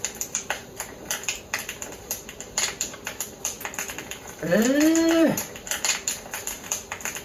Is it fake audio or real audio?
fake